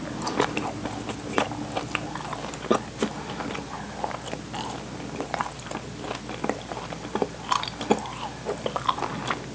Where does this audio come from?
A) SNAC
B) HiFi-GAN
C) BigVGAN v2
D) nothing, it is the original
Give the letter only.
D